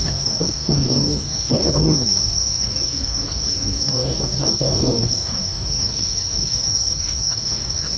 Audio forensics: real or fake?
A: fake